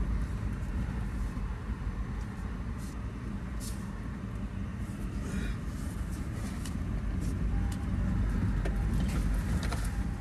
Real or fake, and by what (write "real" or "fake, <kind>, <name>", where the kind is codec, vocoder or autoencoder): real